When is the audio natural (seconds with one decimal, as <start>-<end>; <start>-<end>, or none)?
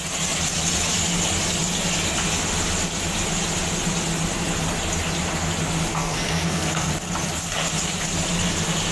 0.0-5.9; 6.9-8.9